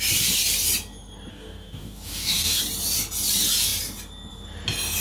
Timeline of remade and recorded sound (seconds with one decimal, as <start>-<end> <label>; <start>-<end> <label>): 0.0-1.3 recorded; 1.3-2.6 remade; 2.6-5.0 recorded